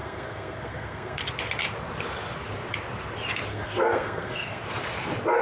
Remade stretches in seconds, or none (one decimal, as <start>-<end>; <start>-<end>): 0.0-1.2; 3.5-4.6